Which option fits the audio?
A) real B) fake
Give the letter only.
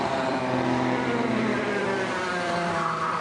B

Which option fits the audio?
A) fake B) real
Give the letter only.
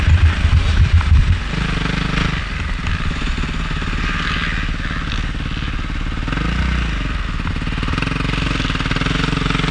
B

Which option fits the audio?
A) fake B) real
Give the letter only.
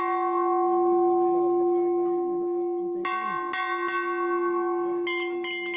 B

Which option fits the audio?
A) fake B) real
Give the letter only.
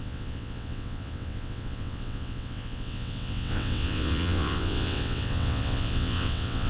A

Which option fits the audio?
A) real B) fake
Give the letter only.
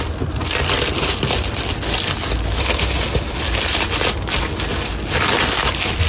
A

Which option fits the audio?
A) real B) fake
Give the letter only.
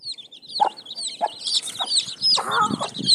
A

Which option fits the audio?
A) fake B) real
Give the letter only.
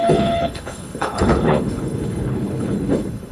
A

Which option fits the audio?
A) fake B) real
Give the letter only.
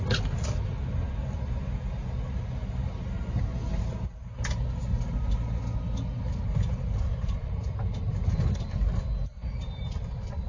B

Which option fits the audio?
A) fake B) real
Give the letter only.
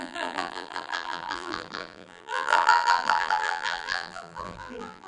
A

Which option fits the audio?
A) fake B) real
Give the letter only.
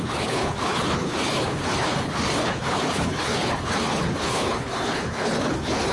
A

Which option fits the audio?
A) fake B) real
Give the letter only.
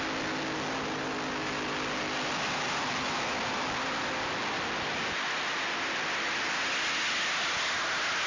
B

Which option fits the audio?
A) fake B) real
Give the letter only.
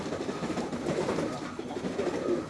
B